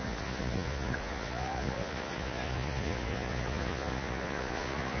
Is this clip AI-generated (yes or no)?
yes